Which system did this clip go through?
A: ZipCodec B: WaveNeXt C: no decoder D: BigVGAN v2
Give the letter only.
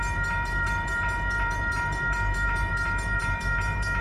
D